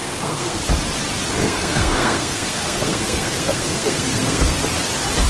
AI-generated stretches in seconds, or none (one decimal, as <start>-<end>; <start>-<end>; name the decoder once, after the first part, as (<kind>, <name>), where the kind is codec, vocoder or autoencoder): 0.0-0.6 (codec, SNAC); 1.4-4.6